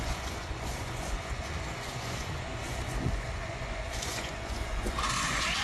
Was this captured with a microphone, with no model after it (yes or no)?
no